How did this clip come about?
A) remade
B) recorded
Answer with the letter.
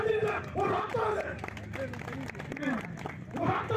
B